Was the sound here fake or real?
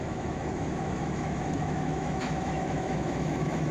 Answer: fake